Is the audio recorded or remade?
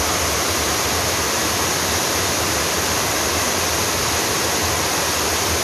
recorded